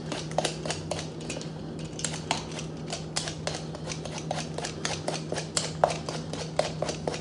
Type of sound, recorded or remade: recorded